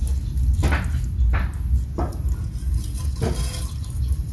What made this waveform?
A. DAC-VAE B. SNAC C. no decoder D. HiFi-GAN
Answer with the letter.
C